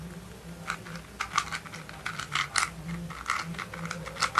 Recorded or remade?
recorded